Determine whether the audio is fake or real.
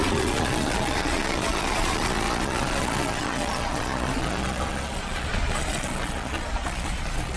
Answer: fake